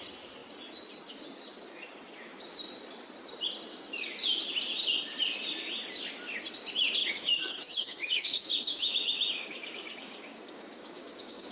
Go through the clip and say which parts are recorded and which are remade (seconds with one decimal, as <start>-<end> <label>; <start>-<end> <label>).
0.0-7.0 recorded; 7.0-11.5 remade